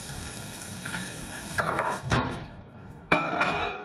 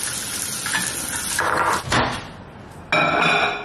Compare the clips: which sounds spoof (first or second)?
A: first